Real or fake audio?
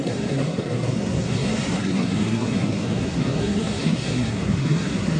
fake